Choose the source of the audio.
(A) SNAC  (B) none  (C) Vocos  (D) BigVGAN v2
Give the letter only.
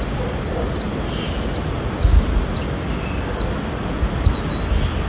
B